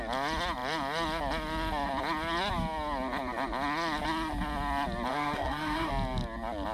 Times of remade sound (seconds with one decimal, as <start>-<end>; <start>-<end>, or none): 5.1-5.9